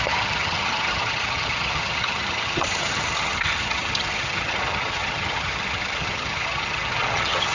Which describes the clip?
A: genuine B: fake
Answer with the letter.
B